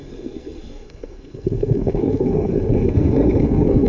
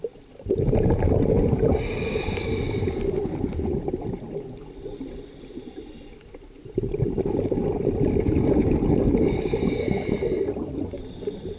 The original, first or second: second